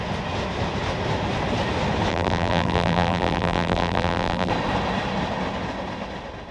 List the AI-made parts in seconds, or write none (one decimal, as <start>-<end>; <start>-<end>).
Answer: 2.1-4.5